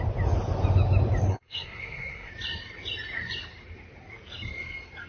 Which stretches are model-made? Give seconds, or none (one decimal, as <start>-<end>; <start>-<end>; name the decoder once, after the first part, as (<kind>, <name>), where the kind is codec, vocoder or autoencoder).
1.3-2.3 (codec, SNAC)